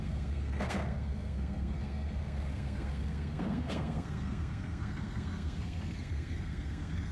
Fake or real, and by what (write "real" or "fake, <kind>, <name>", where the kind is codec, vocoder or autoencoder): fake, codec, SNAC